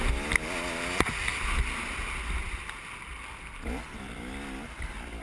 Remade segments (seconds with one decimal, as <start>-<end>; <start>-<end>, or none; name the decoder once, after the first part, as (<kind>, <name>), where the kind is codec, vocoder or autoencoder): none